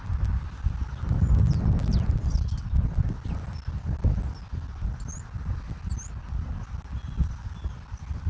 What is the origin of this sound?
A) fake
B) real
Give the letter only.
B